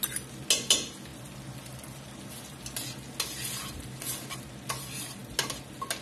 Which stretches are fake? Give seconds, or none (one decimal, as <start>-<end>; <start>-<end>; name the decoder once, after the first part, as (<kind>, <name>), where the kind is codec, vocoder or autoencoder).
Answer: none